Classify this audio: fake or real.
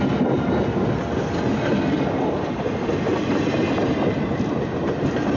real